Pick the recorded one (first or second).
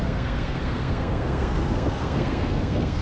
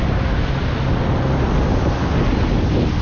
second